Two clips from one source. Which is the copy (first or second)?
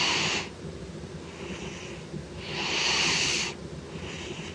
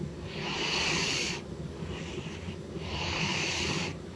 second